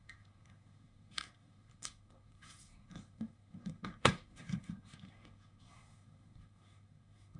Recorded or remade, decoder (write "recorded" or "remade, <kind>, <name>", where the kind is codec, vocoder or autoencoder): remade, codec, SNAC